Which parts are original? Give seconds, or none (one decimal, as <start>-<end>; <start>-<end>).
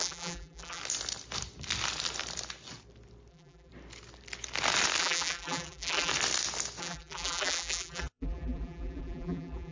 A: 0.8-3.3; 3.7-5.0; 6.1-6.8